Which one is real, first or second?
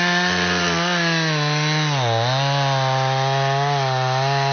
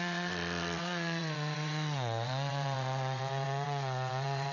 first